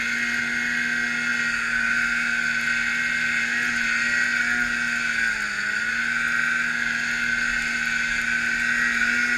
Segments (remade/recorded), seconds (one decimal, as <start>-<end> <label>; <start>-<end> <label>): 0.0-9.4 recorded